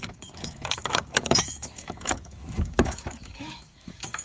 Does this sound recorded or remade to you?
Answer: remade